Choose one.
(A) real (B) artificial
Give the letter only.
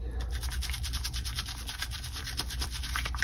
A